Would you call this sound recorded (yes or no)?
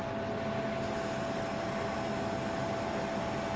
yes